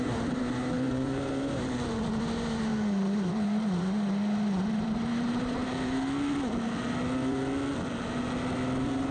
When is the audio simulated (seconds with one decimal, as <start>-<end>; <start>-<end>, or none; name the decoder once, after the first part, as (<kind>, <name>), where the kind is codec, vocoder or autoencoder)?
0.0-5.6 (vocoder, BigVGAN v2)